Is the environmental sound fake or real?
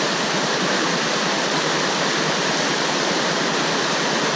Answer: real